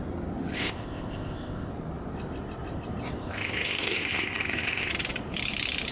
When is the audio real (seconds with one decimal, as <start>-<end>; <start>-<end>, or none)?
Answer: 0.0-0.5; 1.7-3.2; 4.9-5.9